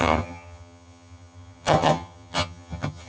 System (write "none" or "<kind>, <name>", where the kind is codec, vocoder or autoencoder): vocoder, HiFi-GAN